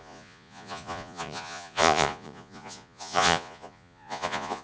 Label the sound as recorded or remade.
remade